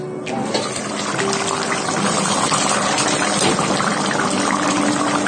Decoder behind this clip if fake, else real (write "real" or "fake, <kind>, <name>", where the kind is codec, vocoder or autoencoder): real